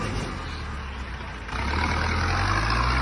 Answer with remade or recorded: recorded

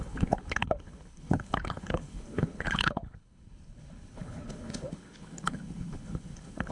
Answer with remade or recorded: remade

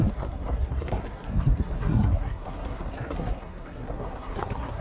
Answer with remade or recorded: remade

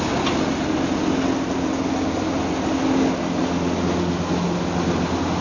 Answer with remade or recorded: recorded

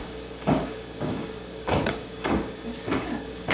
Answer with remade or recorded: remade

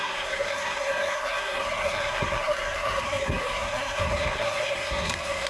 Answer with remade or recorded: remade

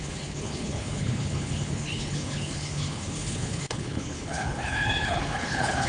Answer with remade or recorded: remade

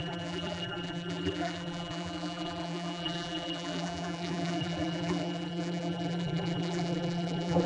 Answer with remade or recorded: remade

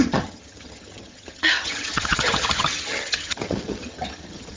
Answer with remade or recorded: remade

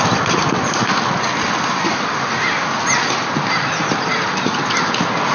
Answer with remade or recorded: recorded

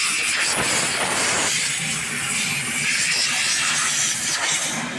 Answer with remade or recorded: recorded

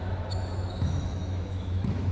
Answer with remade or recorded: remade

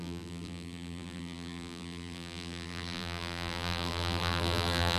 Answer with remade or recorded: remade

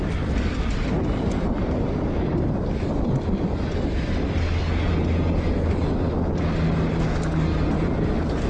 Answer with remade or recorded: recorded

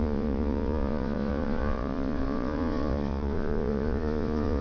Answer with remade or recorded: remade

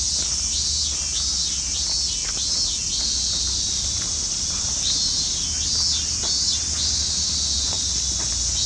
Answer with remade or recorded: recorded